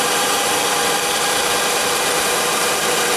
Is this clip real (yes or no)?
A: no